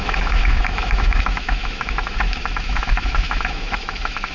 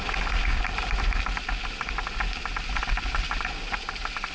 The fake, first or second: first